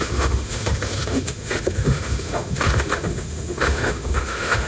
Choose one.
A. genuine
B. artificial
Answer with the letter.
B